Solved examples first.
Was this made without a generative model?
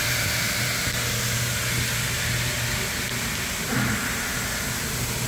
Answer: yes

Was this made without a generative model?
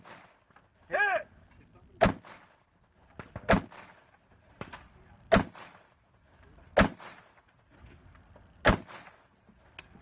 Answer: yes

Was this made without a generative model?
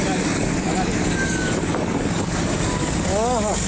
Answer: no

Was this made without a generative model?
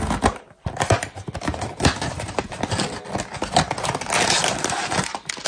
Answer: yes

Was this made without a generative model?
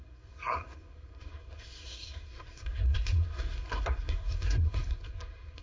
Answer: no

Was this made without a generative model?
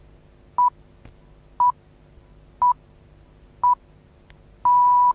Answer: yes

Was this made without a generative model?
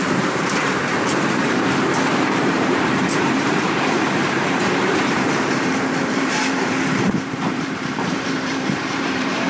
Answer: no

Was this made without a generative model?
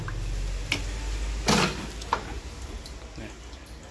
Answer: yes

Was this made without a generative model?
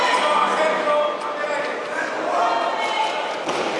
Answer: yes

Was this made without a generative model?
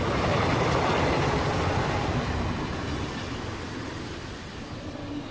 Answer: yes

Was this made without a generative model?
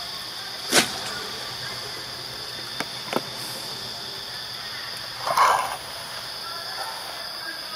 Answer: yes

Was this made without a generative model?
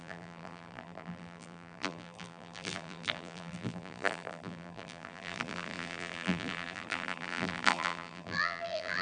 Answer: no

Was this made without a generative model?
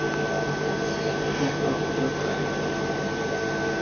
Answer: yes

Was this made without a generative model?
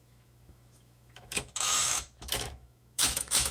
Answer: no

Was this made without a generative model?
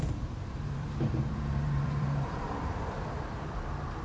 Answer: no